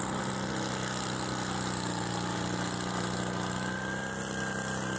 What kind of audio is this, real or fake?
real